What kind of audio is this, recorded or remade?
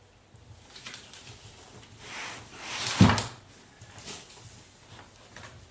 recorded